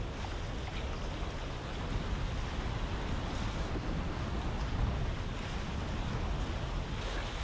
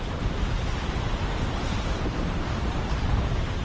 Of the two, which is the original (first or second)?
first